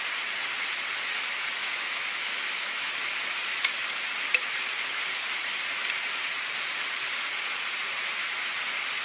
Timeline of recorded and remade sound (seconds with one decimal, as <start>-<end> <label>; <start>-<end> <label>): 0.0-1.6 recorded; 1.6-2.9 remade; 2.9-9.0 recorded